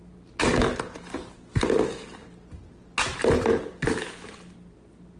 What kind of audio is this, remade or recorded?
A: recorded